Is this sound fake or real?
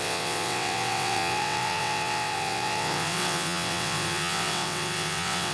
fake